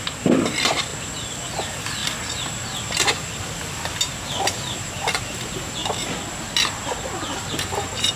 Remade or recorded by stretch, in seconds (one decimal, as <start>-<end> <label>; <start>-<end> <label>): 0.0-8.2 recorded